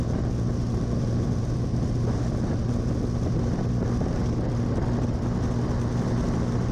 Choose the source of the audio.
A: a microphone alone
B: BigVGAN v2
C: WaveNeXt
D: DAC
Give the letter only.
A